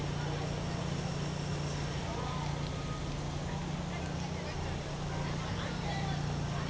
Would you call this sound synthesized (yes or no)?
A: no